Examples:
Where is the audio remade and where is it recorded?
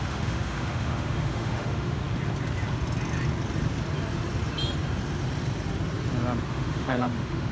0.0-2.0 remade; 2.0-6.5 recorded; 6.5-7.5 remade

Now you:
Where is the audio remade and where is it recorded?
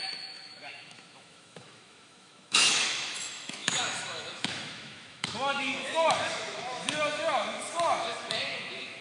0.0-9.0 remade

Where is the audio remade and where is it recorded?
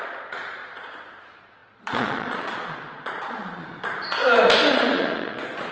0.0-4.2 remade; 4.2-4.7 recorded; 4.7-5.7 remade